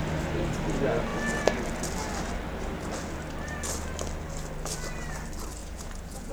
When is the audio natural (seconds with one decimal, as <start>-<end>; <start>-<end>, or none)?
0.0-5.6